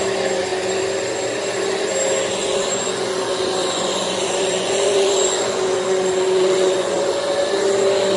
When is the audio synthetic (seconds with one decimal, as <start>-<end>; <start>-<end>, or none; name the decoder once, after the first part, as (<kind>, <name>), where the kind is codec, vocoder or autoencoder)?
2.4-7.3 (vocoder, Vocos)